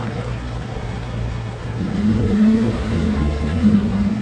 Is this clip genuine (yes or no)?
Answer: no